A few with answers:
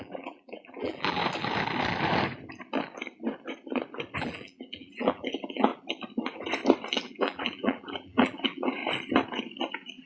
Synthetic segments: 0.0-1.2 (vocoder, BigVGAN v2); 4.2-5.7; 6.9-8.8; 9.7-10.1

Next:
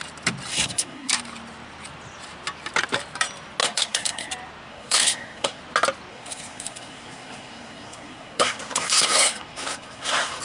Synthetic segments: 0.5-1.1 (codec, SNAC); 3.6-4.3; 4.7-5.6; 6.1-10.4

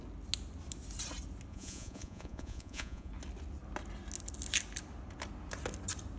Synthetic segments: 1.5-3.1 (vocoder, Vocos)

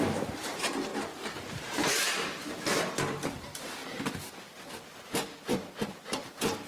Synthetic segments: 0.0-3.8 (vocoder, BigVGAN v2); 4.3-5.2; 5.8-6.7